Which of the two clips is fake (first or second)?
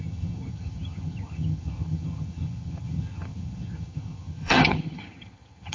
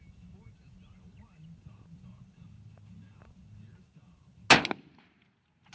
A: first